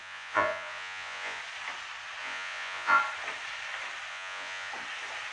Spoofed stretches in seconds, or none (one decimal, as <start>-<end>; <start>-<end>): 0.0-1.4; 2.2-3.0; 4.1-4.7